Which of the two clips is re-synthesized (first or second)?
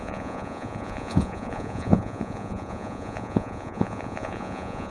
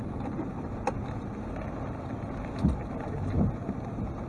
first